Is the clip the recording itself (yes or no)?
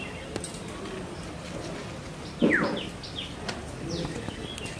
yes